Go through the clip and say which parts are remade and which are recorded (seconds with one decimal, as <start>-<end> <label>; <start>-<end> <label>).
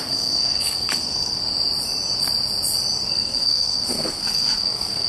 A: 0.0-1.4 remade; 1.4-3.1 recorded; 3.1-5.1 remade